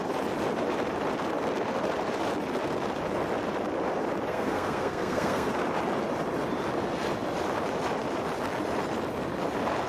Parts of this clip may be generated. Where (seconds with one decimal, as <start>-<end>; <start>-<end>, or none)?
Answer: 4.3-5.5